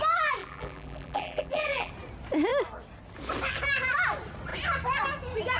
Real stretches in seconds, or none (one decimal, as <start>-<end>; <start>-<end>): 0.0-0.4; 1.9-5.6